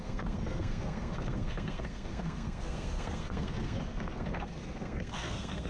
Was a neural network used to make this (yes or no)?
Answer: yes